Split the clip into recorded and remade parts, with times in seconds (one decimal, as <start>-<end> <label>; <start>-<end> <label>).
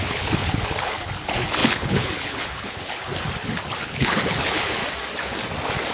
0.0-3.1 remade; 3.1-3.8 recorded; 3.8-4.8 remade; 4.8-5.9 recorded